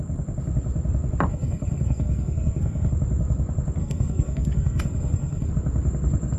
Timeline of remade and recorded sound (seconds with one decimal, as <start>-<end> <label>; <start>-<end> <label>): 0.0-1.3 recorded; 1.3-2.9 remade; 2.9-3.8 recorded; 3.8-5.5 remade; 5.5-6.4 recorded